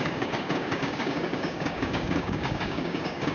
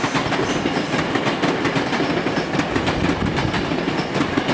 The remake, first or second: first